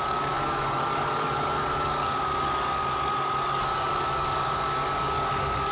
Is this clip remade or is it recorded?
remade